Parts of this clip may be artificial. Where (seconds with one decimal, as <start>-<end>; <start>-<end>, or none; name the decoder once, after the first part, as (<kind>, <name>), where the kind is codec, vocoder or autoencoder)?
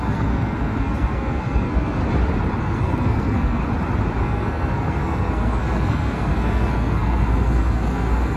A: 0.0-2.0 (codec, SNAC); 2.6-3.6; 4.2-8.4